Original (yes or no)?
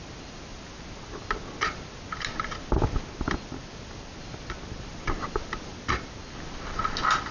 yes